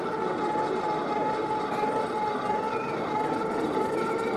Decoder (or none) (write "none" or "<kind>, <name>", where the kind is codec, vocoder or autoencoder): none